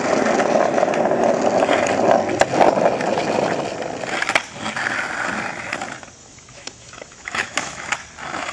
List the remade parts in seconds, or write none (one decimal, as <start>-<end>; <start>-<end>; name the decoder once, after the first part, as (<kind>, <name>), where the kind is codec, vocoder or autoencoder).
6.2-7.9 (autoencoder, DAC-VAE)